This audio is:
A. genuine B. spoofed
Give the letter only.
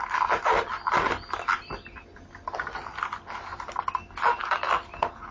A